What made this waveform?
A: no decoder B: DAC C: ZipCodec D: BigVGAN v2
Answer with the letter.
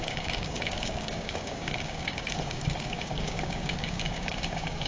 B